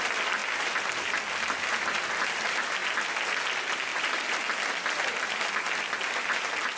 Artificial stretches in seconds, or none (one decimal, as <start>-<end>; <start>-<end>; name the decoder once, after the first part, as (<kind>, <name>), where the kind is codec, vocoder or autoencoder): 0.4-2.2 (vocoder, BigVGAN v2); 3.9-5.5